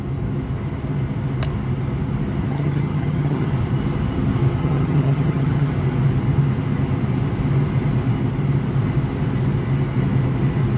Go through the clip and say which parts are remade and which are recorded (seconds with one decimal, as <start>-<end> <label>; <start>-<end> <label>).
0.0-2.5 recorded; 2.5-3.5 remade; 3.5-4.6 recorded; 4.6-5.7 remade; 5.7-10.8 recorded

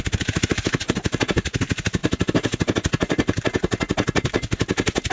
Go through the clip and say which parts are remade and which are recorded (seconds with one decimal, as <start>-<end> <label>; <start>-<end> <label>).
0.0-5.1 recorded

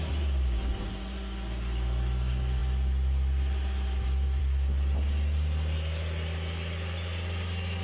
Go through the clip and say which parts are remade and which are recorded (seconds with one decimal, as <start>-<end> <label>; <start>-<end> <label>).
0.0-7.8 recorded

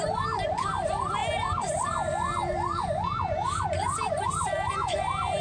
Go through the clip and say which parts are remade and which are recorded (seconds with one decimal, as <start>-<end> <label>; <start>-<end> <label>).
0.0-2.4 remade; 2.4-4.1 recorded; 4.1-5.4 remade

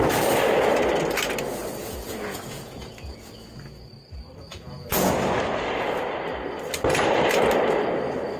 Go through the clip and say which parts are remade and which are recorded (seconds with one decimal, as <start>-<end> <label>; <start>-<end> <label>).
0.0-1.8 recorded; 1.8-3.9 remade; 3.9-4.5 recorded; 4.5-5.1 remade; 5.1-8.4 recorded

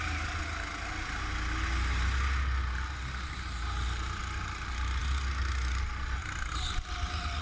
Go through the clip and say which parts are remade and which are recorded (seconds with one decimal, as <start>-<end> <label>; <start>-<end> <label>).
0.0-7.4 recorded

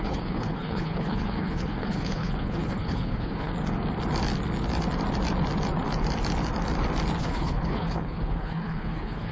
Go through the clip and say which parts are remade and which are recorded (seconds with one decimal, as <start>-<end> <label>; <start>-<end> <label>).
0.0-3.5 remade; 3.5-7.2 recorded; 7.2-9.3 remade

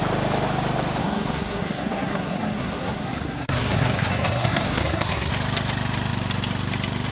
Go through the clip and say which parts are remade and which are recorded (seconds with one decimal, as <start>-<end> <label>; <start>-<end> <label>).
0.0-1.0 recorded; 1.0-5.3 remade; 5.3-7.1 recorded